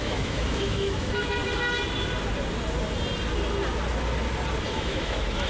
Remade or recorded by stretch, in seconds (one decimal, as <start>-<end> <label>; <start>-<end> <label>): 0.0-1.4 remade; 1.4-4.7 recorded; 4.7-5.5 remade